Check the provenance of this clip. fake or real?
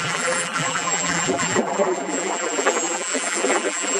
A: fake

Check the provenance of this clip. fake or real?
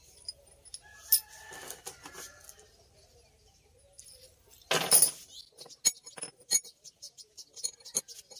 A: real